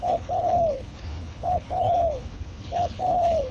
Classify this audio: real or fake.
fake